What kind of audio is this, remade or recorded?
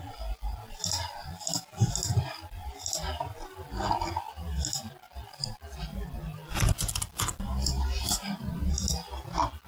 recorded